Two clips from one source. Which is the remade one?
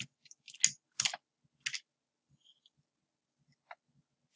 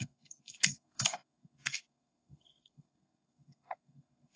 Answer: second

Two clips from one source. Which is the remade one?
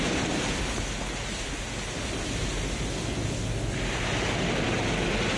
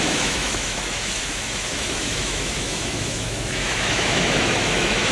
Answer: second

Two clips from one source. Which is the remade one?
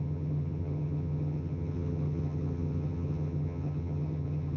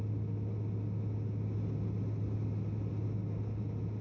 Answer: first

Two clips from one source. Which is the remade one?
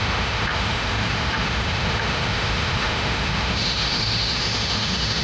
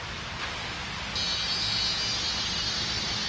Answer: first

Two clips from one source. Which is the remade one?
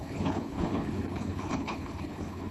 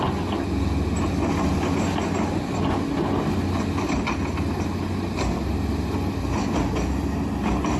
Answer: first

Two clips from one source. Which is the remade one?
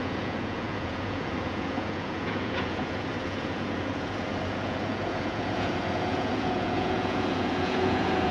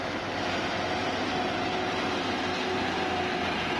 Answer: first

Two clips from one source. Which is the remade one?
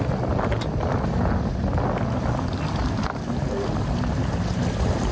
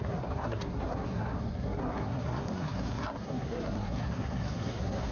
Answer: second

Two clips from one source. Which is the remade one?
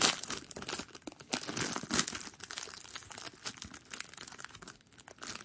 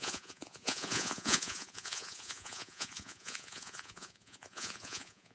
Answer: second